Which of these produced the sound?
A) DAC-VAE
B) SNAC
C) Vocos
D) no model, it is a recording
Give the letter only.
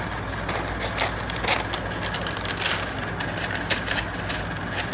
D